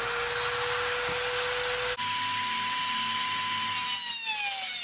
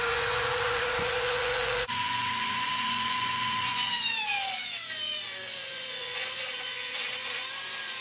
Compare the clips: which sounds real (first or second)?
first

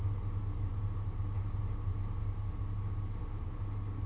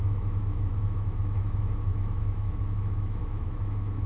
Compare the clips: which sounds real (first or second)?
first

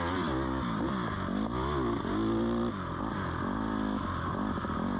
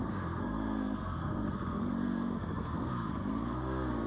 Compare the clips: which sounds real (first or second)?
first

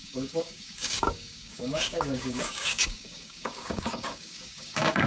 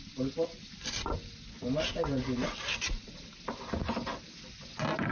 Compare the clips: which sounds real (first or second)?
second